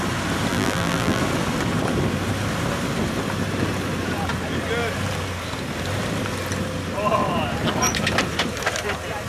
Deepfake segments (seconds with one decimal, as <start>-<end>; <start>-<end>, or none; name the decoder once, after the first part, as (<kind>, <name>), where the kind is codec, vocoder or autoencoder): 0.5-1.2 (vocoder, BigVGAN v2)